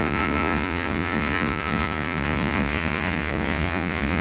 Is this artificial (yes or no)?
yes